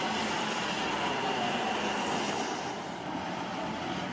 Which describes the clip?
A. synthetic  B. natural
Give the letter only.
B